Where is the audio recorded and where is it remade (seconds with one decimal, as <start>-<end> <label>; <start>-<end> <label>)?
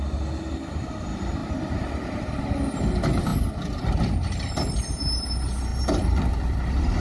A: 0.0-1.4 recorded; 1.4-2.4 remade; 2.4-5.7 recorded; 5.7-6.3 remade; 6.3-7.0 recorded